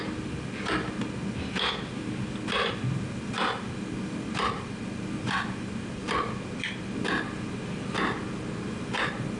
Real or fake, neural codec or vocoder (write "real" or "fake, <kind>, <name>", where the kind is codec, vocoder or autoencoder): real